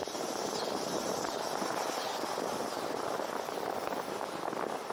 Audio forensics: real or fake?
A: real